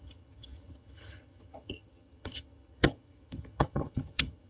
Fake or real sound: fake